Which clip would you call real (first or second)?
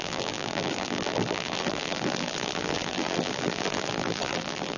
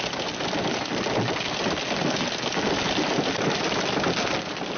second